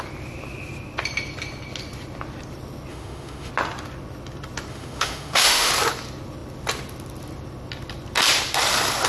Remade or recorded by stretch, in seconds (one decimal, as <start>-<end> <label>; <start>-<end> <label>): 0.0-2.9 recorded; 2.9-3.5 remade; 3.5-4.7 recorded; 4.7-5.7 remade; 5.7-9.1 recorded